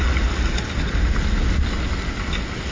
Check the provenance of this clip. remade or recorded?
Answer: recorded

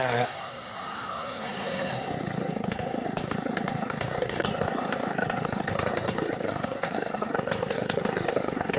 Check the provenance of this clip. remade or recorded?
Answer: remade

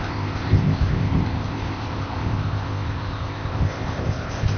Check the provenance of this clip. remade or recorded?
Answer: remade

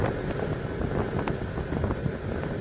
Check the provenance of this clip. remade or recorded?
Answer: recorded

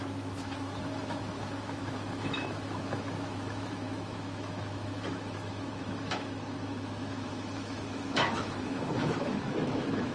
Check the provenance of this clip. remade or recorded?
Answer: remade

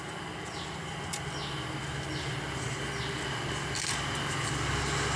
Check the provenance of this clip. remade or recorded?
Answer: recorded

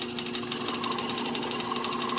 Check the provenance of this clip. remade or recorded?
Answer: recorded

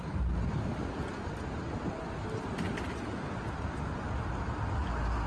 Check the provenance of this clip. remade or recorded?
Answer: recorded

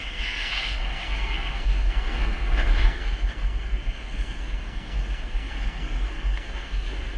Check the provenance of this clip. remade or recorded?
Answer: remade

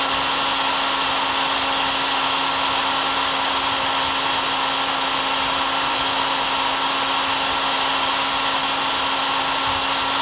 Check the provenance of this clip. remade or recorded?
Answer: recorded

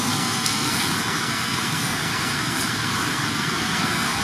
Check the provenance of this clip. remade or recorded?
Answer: remade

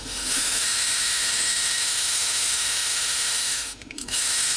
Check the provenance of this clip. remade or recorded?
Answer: remade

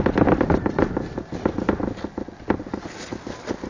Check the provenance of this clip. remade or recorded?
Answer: recorded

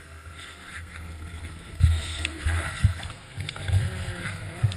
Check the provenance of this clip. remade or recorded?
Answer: remade